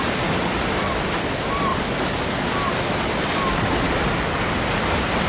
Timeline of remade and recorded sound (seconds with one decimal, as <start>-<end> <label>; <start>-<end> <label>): 0.0-5.3 recorded